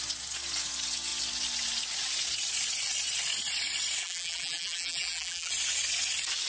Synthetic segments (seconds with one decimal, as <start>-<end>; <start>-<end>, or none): 4.0-5.5